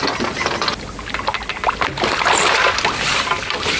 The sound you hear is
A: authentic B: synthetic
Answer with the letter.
A